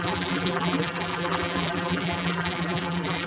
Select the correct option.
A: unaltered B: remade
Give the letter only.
B